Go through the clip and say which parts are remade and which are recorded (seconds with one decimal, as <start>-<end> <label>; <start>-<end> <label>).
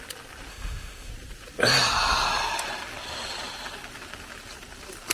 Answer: 0.0-0.5 recorded; 0.5-1.1 remade; 1.1-5.1 recorded